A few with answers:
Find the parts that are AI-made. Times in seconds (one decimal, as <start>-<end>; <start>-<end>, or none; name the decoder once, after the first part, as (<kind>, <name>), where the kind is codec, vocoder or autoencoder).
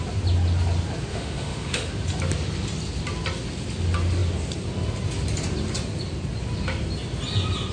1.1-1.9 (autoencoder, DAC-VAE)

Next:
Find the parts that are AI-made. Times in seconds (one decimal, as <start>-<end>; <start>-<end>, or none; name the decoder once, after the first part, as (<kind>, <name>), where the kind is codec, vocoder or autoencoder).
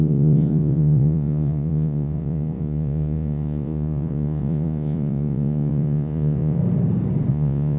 0.0-6.6 (vocoder, Vocos); 7.3-7.8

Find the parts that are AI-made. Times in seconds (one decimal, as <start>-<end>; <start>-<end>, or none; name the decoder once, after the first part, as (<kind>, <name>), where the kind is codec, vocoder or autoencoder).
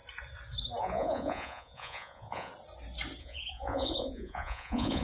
0.8-2.5 (vocoder, Vocos); 3.2-5.0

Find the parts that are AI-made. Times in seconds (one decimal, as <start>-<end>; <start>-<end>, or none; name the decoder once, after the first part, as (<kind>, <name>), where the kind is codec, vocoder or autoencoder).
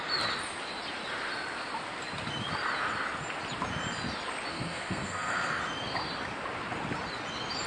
4.5-5.6 (codec, SNAC)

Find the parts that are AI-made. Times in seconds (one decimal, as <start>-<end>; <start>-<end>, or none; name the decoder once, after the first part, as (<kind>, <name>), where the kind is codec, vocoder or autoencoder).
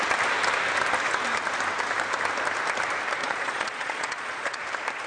3.2-4.6 (vocoder, Vocos)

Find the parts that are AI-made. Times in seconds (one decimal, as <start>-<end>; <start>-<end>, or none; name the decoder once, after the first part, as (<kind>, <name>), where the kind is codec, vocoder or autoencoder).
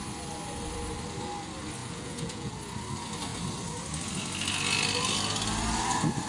1.8-2.5 (vocoder, Vocos)